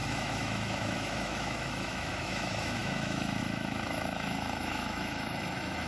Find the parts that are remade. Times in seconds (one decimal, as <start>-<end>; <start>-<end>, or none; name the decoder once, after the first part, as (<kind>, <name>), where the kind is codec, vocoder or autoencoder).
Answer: 0.0-5.9 (autoencoder, DAC-VAE)